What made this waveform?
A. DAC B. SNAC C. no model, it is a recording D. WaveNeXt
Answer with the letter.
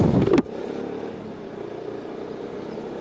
C